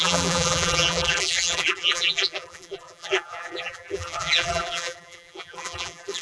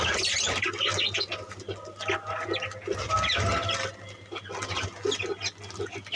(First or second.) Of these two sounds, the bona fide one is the second